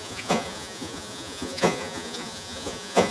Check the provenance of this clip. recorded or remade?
remade